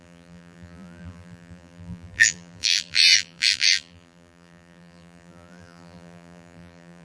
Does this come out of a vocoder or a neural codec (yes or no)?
yes